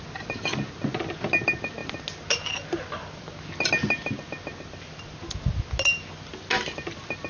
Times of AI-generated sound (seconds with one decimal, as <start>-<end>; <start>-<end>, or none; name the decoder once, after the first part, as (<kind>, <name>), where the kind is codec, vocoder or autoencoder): none